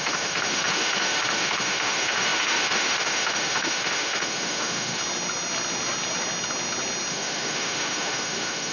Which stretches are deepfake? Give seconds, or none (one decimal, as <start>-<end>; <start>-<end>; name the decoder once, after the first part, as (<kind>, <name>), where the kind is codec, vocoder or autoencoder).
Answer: 0.0-5.0 (autoencoder, DAC-VAE); 7.1-8.7